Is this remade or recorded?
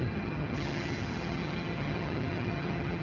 remade